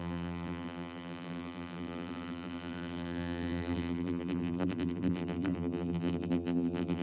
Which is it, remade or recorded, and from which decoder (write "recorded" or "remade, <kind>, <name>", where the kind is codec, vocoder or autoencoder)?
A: remade, vocoder, BigVGAN v2